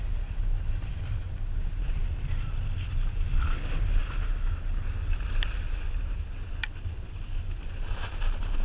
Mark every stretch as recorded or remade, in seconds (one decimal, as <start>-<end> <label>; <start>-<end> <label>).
0.0-8.6 recorded